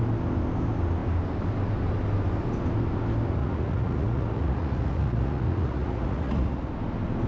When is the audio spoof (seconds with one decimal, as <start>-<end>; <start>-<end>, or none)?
3.4-6.7